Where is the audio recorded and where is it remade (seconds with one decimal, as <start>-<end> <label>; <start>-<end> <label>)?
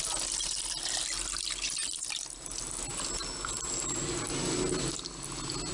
0.0-5.7 recorded